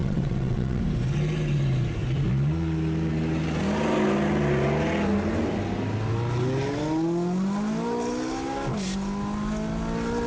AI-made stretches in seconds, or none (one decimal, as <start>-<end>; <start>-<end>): 0.0-0.8